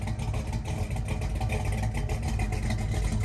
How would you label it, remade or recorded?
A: recorded